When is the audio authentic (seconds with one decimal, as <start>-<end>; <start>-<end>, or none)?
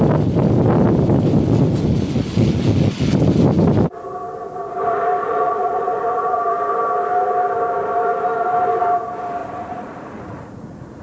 0.0-5.2; 6.4-9.4